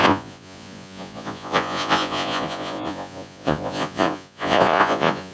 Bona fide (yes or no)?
no